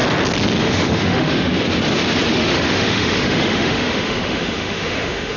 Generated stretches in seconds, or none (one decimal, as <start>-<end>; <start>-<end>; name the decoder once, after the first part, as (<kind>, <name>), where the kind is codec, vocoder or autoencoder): 0.6-1.5 (autoencoder, DAC-VAE); 2.3-5.4

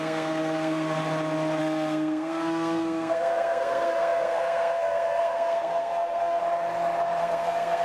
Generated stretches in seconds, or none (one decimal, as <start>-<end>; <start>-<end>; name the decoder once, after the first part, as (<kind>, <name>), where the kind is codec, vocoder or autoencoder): 0.0-1.0 (codec, SNAC); 1.6-6.4; 7.2-7.8

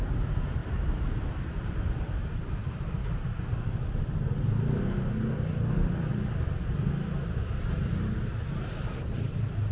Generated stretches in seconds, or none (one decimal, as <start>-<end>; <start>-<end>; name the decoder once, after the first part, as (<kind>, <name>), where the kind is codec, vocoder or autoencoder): 0.0-3.0 (vocoder, BigVGAN v2); 5.1-6.1; 8.7-9.7

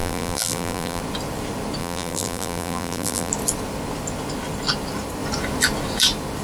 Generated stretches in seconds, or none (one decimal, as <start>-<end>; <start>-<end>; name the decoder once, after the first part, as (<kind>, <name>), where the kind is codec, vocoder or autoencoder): 0.0-1.0 (vocoder, BigVGAN v2); 1.8-3.3

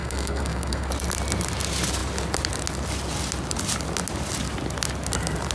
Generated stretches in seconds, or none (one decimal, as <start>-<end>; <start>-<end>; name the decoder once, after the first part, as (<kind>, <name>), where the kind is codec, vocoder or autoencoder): 0.0-0.9 (codec, SNAC)